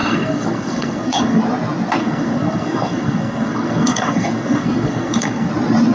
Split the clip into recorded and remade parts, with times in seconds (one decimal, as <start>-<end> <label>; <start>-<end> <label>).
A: 0.0-1.4 remade; 1.4-2.0 recorded; 2.0-5.5 remade; 5.5-5.9 recorded